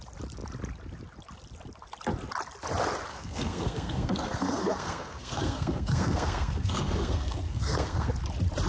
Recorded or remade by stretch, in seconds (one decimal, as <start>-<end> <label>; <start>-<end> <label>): 0.0-3.1 recorded; 3.1-8.1 remade; 8.1-8.7 recorded